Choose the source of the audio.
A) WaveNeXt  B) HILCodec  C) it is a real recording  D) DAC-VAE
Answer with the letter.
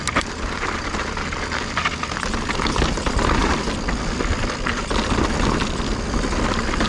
C